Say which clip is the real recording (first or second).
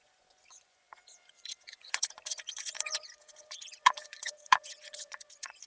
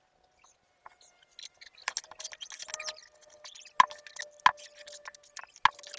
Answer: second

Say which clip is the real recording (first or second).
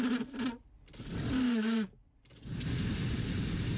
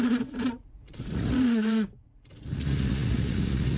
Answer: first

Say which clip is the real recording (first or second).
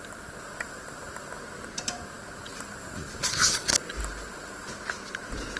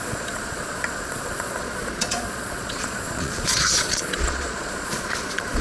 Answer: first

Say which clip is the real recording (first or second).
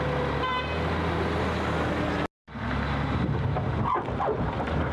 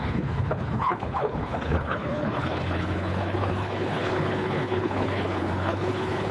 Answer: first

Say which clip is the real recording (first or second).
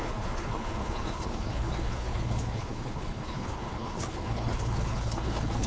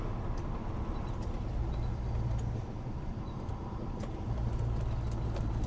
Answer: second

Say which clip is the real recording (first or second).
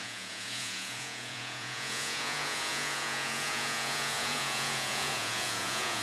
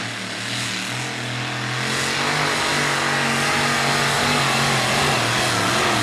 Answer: second